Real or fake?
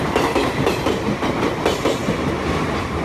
real